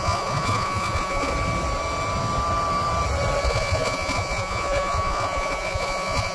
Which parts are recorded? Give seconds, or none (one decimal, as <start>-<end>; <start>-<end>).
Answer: 1.3-3.4